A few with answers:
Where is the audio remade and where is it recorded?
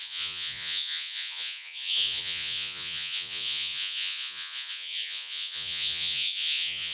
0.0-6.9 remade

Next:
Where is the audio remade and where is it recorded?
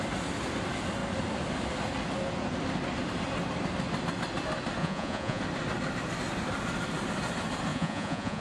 0.0-4.8 recorded; 4.8-5.4 remade; 5.4-7.7 recorded; 7.7-8.4 remade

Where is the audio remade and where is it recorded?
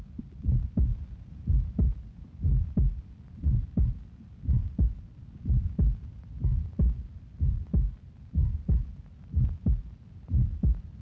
0.0-11.0 recorded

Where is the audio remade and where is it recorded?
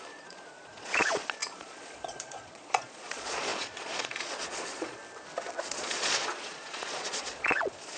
0.0-5.0 remade; 5.0-5.7 recorded; 5.7-8.0 remade